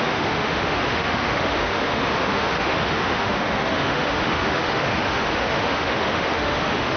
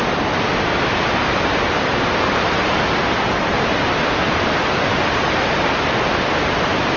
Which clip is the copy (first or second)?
first